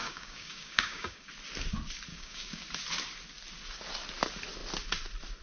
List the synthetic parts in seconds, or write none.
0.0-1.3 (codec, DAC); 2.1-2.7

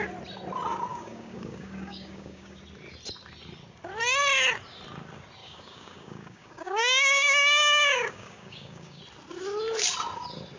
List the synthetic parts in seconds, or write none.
0.9-2.6 (codec, DAC); 5.4-9.0